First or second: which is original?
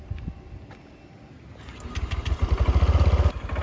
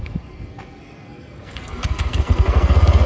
first